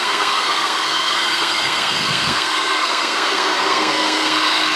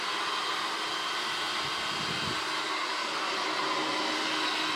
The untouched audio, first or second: second